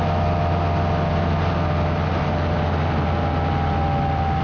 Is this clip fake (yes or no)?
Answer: no